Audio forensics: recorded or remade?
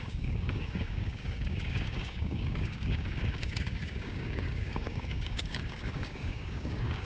remade